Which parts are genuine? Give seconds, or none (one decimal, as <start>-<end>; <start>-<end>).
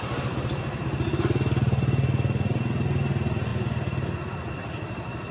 0.0-5.3